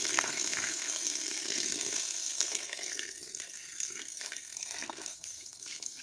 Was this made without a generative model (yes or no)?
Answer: no